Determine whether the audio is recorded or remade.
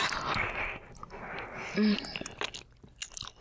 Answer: recorded